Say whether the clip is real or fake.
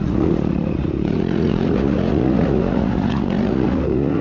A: fake